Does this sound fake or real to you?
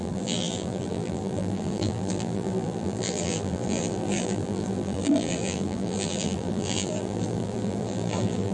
fake